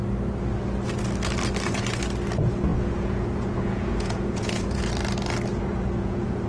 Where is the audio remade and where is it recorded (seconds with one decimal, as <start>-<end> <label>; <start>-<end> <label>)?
0.0-2.7 recorded; 2.7-4.9 remade; 4.9-5.5 recorded; 5.5-6.5 remade